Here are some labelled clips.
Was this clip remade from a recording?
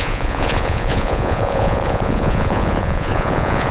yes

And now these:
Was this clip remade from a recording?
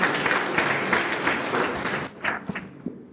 no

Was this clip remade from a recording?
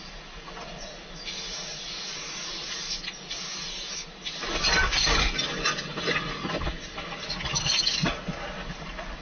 no